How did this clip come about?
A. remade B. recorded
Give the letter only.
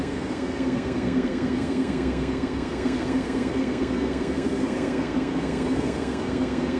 A